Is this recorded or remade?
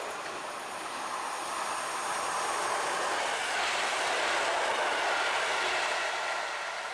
recorded